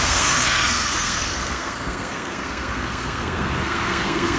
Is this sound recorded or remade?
remade